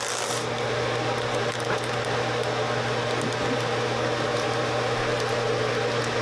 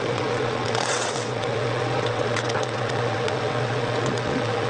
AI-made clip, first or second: second